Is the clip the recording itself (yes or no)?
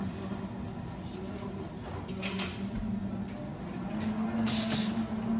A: yes